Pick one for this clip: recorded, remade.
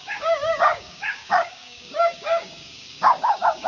remade